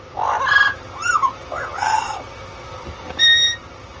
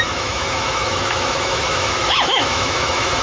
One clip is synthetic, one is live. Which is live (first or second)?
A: first